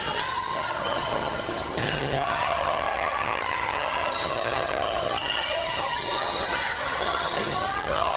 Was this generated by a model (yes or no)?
yes